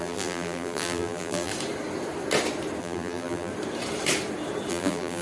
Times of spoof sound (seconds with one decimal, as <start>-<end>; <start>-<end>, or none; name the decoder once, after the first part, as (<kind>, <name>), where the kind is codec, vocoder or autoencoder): 0.0-1.5 (vocoder, BigVGAN v2); 2.8-3.5; 4.7-5.2